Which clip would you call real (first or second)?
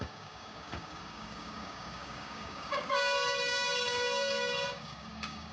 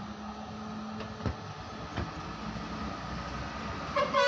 second